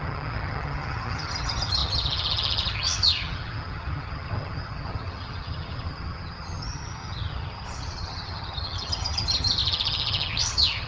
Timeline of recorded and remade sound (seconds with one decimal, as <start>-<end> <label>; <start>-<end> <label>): 0.0-10.9 remade